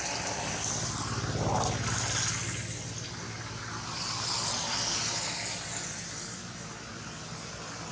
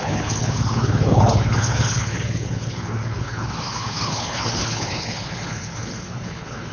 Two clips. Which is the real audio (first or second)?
first